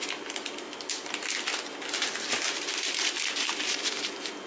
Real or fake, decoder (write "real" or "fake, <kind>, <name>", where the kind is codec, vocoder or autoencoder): real